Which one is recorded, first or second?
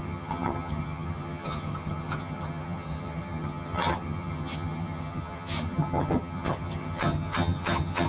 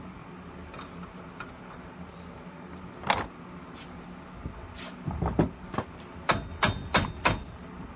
second